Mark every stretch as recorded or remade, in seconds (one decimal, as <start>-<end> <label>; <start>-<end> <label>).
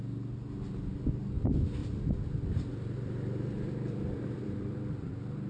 0.0-1.8 recorded; 1.8-5.1 remade; 5.1-5.5 recorded